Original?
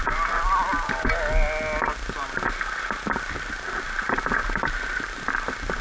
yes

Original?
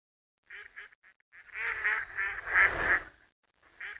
yes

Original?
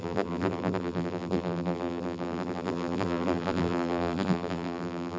no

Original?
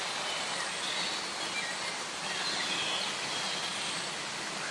yes